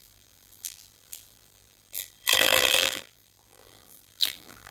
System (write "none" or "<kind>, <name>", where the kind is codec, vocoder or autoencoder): vocoder, BigVGAN v2